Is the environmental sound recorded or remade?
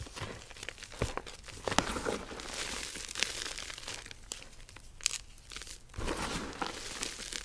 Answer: recorded